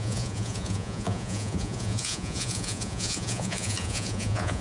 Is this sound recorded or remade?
remade